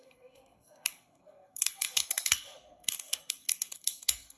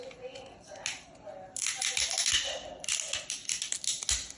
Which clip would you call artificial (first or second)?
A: first